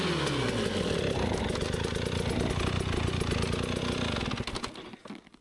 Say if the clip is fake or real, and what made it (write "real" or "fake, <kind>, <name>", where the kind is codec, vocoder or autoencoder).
real